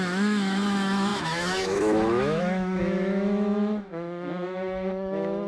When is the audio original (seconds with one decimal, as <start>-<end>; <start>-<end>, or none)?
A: none